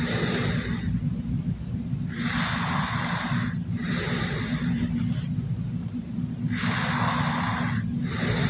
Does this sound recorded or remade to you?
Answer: recorded